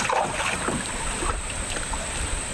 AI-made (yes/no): yes